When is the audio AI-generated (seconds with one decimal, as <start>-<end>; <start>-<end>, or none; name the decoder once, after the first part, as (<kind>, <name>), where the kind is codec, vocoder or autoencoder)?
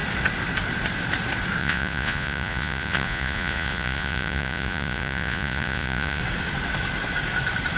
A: 1.6-6.2 (vocoder, Vocos)